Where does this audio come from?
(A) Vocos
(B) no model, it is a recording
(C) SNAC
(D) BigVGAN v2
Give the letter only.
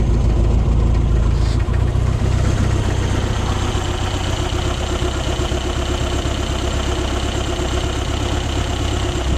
B